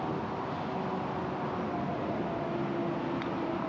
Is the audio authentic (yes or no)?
yes